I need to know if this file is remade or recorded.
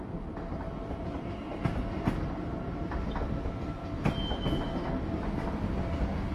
recorded